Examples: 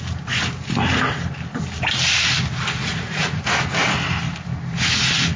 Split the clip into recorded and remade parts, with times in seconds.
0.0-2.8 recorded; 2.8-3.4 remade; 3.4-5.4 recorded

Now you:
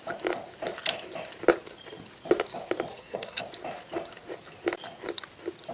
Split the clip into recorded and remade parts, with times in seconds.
0.0-2.9 recorded; 2.9-3.4 remade; 3.4-5.7 recorded